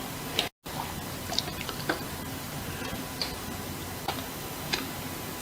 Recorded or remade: recorded